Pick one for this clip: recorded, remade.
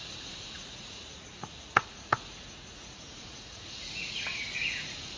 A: remade